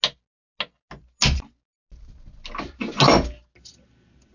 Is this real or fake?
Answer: real